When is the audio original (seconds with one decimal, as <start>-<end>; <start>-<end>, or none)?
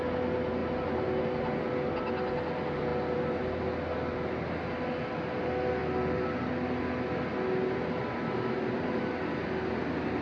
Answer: 0.0-10.2